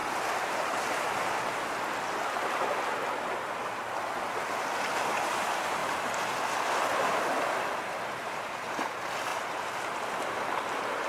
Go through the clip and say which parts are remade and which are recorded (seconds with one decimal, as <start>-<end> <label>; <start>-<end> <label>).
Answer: 0.0-5.8 recorded; 5.8-6.3 remade; 6.3-9.3 recorded; 9.3-10.1 remade; 10.1-11.1 recorded